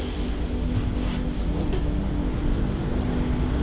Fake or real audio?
real